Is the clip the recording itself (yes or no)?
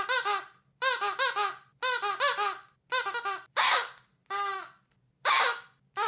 yes